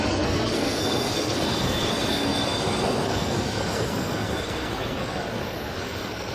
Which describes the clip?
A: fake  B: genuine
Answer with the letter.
A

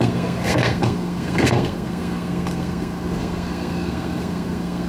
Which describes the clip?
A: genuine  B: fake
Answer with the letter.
B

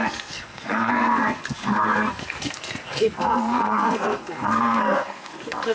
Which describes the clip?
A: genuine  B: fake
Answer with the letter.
B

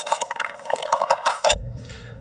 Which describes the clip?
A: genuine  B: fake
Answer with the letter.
B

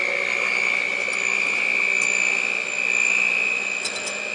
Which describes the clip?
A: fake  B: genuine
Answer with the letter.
B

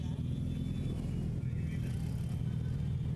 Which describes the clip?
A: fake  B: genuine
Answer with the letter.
B